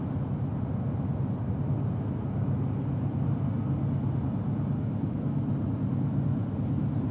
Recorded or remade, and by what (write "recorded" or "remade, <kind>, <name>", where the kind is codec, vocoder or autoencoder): recorded